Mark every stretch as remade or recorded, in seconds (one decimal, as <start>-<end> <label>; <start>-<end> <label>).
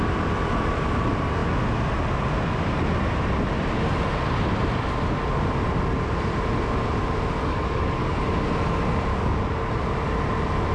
0.0-7.4 recorded; 7.4-8.2 remade; 8.2-9.1 recorded; 9.1-9.7 remade; 9.7-10.7 recorded